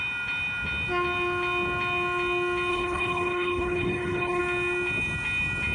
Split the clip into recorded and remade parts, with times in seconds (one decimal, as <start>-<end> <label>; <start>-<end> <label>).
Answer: 0.0-2.7 recorded; 2.7-4.4 remade; 4.4-5.7 recorded